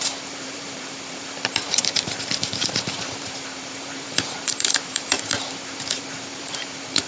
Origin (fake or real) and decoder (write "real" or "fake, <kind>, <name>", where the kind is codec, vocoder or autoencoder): fake, vocoder, BigVGAN v2